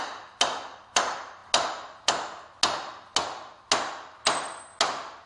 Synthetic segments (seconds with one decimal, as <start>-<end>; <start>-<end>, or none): none